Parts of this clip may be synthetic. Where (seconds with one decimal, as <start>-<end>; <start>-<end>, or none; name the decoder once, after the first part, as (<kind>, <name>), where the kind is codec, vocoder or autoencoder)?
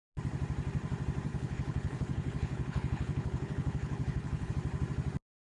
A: 1.3-4.5 (codec, HILCodec)